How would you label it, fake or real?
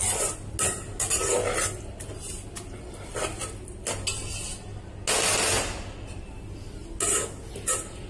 real